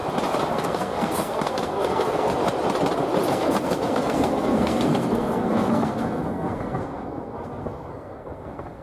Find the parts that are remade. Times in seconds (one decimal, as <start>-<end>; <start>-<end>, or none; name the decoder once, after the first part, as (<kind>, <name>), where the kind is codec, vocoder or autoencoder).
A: 0.5-2.4 (codec, SNAC); 3.3-8.8